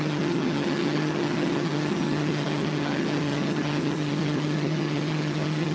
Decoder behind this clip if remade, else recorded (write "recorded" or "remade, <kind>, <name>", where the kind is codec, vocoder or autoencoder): remade, vocoder, HiFi-GAN